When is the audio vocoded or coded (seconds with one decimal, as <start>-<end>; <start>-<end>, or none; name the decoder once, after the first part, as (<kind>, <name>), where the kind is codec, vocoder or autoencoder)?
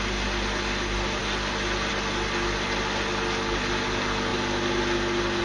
none